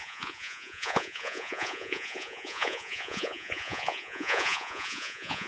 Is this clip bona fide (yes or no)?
no